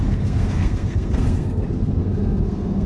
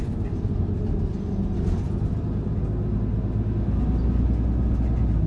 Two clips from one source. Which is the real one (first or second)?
second